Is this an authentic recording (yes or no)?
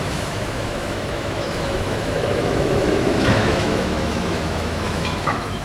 no